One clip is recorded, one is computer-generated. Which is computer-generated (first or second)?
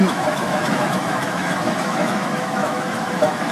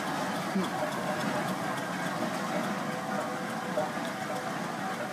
first